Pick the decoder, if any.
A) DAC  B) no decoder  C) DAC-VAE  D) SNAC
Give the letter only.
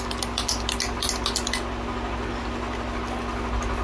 B